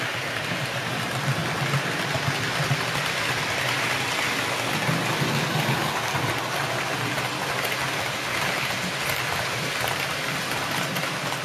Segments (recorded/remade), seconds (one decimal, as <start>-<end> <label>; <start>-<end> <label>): 0.0-11.4 recorded

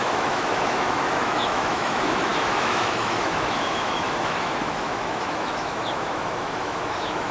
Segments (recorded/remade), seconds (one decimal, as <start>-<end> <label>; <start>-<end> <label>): 0.0-7.3 remade